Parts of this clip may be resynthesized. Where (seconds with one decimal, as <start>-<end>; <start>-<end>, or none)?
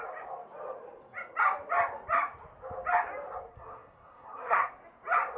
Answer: 3.5-4.7